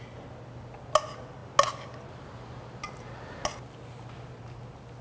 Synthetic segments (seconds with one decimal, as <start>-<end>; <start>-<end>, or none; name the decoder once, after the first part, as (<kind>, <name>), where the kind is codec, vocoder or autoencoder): none